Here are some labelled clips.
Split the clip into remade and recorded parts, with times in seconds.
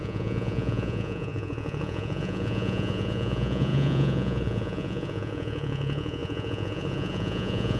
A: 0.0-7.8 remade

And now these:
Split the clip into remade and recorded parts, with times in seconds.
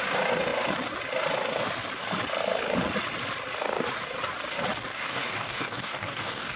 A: 0.0-4.9 recorded; 4.9-6.6 remade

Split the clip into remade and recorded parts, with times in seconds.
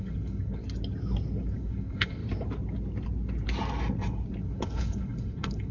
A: 0.0-0.6 remade; 0.6-1.5 recorded; 1.5-2.2 remade; 2.2-4.4 recorded; 4.4-5.7 remade